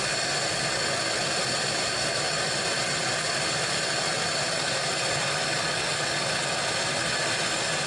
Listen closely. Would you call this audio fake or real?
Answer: real